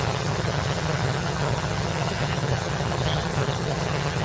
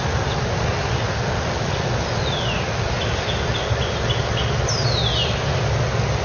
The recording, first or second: second